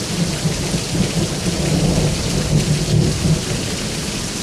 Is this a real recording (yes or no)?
yes